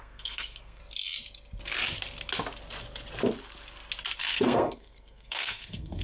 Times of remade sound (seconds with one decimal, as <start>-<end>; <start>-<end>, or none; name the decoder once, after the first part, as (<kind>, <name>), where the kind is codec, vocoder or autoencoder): 0.0-0.8 (codec, SNAC); 4.2-6.0